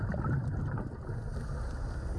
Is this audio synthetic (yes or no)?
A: no